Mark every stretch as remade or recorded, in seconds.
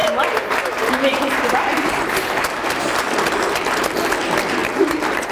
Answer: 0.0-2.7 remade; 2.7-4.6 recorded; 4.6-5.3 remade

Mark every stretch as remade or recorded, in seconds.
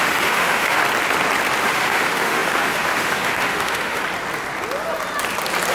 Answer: 0.0-0.8 remade; 0.8-1.6 recorded; 1.6-4.0 remade; 4.0-5.7 recorded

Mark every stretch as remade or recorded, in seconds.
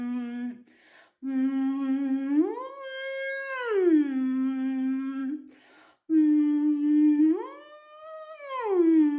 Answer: 0.0-9.2 recorded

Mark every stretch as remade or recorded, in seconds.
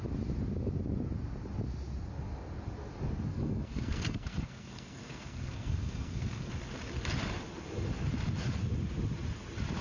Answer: 0.0-3.3 recorded; 3.3-6.5 remade; 6.5-9.8 recorded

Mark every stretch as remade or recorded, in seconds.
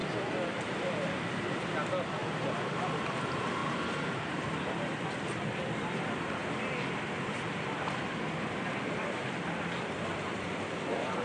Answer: 0.0-0.6 recorded; 0.6-2.2 remade; 2.2-2.9 recorded; 2.9-3.6 remade; 3.6-4.1 recorded; 4.1-11.2 remade